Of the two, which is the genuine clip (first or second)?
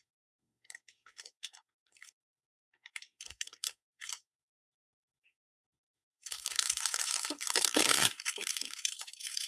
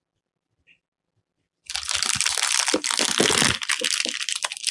second